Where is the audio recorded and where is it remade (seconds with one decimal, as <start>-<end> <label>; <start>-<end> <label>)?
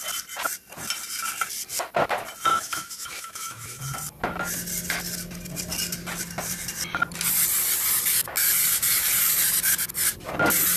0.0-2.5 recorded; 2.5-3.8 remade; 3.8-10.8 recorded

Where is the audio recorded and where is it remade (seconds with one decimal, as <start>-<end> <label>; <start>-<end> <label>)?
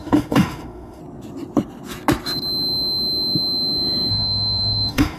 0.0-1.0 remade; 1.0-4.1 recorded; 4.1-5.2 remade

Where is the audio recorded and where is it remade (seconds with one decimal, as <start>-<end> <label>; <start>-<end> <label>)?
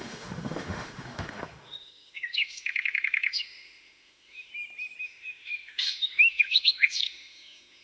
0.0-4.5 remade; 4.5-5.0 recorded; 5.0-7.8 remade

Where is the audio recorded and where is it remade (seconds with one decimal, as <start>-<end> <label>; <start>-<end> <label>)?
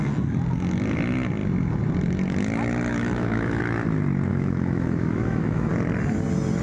0.0-2.9 recorded; 2.9-3.6 remade; 3.6-4.3 recorded; 4.3-5.7 remade; 5.7-6.6 recorded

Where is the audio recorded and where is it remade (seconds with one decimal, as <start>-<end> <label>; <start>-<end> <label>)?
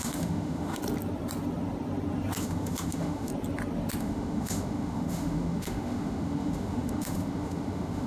0.0-0.8 remade; 0.8-2.4 recorded; 2.4-3.3 remade; 3.3-4.0 recorded; 4.0-8.1 remade